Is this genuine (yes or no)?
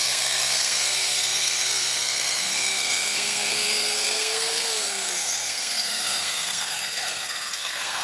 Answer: no